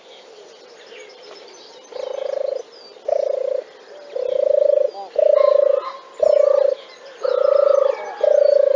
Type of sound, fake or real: real